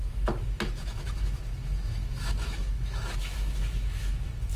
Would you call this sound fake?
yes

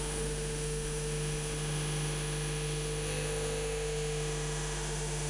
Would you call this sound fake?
yes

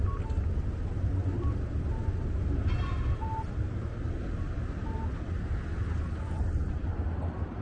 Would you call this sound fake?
no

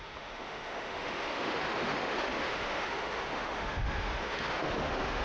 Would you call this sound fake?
yes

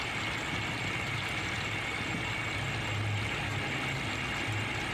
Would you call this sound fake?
no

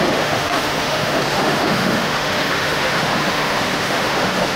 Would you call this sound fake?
yes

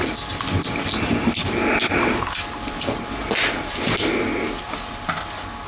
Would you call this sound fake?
no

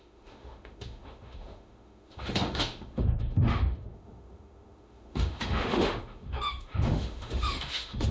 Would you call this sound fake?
yes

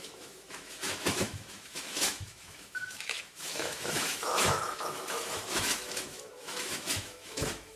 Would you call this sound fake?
yes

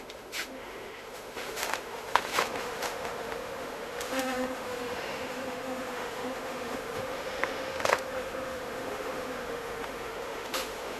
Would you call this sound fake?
yes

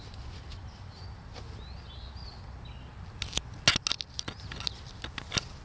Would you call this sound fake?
no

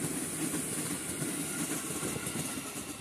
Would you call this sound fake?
no